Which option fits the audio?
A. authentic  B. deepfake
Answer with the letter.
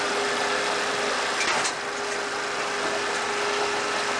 A